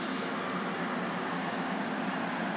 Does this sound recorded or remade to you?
recorded